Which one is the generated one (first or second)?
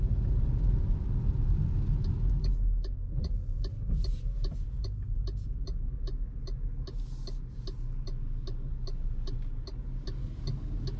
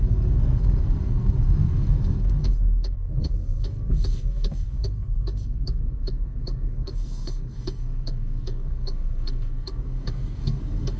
second